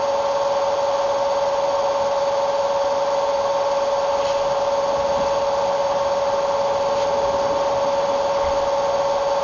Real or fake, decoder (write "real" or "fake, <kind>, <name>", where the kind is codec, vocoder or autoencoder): fake, vocoder, BigVGAN v2